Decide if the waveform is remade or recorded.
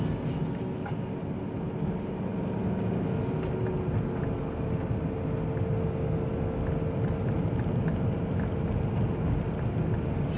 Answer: recorded